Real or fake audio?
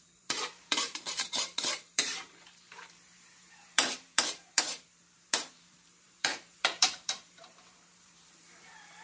fake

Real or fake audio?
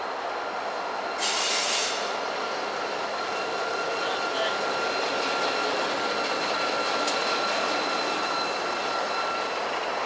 real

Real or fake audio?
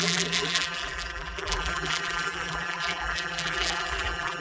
fake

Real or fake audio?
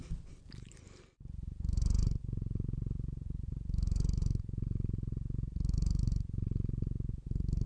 fake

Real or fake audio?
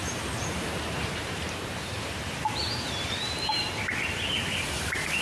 fake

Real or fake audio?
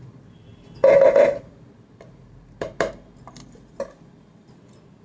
real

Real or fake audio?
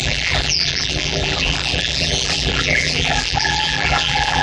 fake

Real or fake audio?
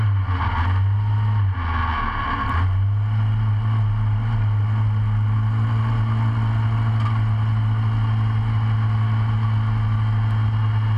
real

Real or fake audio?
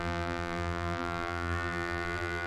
fake